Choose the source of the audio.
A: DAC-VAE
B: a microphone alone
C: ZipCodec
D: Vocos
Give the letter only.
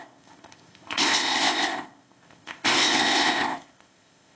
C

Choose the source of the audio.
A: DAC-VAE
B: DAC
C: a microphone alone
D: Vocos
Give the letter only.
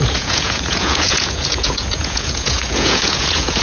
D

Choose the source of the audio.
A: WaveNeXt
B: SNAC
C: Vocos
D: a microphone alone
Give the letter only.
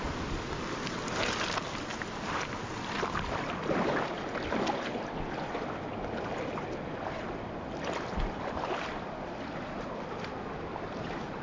D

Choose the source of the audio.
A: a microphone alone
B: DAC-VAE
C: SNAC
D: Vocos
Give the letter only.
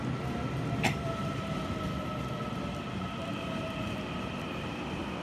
A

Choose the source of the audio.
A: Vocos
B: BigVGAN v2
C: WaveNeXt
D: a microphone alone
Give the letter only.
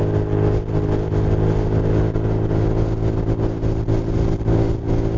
D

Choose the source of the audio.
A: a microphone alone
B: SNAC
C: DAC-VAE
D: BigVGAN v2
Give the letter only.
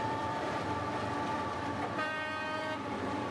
D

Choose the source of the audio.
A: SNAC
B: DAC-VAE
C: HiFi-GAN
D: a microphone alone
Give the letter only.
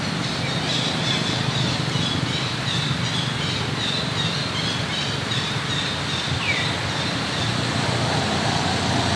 D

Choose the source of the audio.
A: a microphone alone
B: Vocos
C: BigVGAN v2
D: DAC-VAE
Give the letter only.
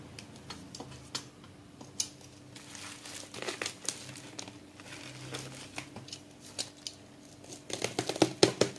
A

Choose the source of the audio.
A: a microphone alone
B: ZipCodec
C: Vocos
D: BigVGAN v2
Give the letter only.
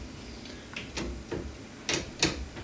A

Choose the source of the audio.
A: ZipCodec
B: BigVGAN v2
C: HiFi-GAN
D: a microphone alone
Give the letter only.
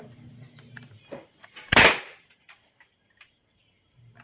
B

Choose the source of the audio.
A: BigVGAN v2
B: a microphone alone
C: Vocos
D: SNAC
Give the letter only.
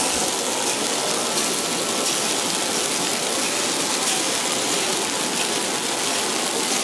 B